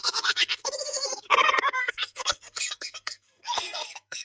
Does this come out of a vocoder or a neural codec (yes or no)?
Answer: yes